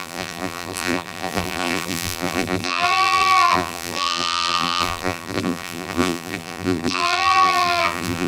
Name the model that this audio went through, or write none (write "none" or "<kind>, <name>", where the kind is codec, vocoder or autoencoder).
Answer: vocoder, BigVGAN v2